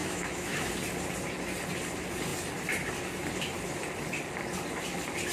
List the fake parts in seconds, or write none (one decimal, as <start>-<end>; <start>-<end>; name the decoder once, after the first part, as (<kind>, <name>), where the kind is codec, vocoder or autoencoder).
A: 0.0-0.7 (autoencoder, DAC-VAE)